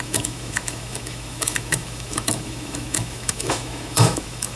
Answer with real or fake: fake